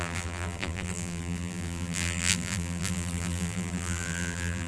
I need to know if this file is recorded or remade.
remade